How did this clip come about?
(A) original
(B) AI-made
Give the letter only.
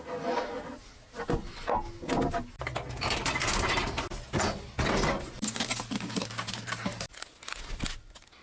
A